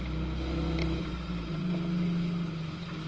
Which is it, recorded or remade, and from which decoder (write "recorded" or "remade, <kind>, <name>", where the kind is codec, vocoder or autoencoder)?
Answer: recorded